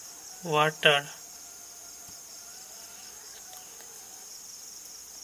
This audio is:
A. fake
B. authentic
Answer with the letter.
B